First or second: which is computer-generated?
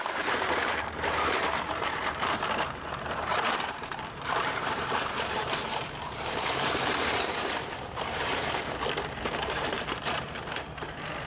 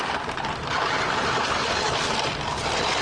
first